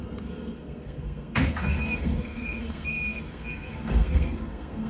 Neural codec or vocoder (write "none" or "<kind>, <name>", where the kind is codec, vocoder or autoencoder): codec, SNAC